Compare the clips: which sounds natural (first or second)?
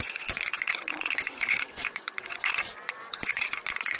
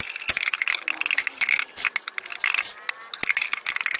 second